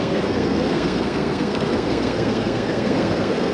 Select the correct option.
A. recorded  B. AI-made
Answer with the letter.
B